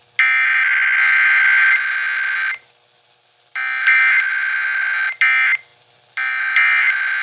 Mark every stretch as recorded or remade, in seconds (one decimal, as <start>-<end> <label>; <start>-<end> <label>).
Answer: 0.0-7.2 recorded